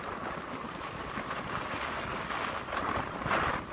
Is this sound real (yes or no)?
yes